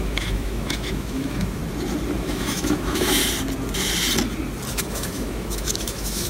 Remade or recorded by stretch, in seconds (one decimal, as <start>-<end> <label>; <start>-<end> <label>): 0.0-1.6 remade; 1.6-2.2 recorded; 2.2-3.2 remade; 3.2-4.7 recorded; 4.7-6.3 remade